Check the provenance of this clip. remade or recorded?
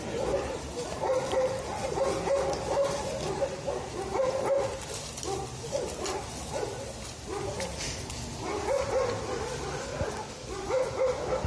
recorded